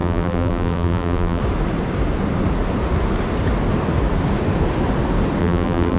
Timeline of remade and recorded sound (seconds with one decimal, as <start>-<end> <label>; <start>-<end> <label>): 0.0-1.4 remade; 1.4-5.4 recorded; 5.4-6.0 remade